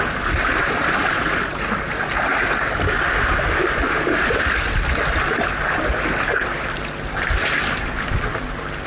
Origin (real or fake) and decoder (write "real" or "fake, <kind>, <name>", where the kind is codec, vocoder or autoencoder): real